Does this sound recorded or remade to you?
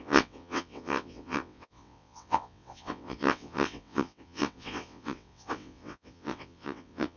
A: remade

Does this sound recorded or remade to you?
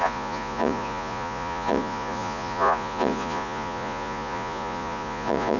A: remade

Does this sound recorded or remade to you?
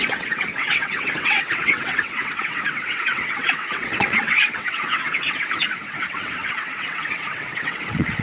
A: remade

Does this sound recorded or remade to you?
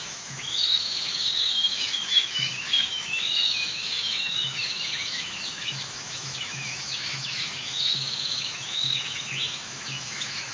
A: remade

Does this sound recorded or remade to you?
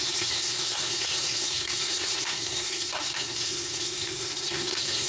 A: remade